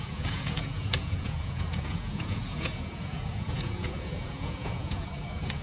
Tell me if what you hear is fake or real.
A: fake